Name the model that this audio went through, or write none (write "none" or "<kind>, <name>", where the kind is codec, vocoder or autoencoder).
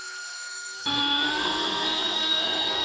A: codec, SNAC